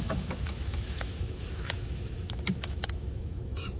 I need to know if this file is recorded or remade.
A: remade